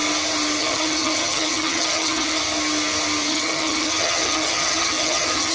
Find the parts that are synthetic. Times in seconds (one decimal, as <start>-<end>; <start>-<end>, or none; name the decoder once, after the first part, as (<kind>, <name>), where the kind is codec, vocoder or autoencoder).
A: 0.6-2.4 (vocoder, HiFi-GAN); 3.3-5.5